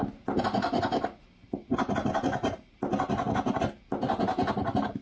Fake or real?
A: real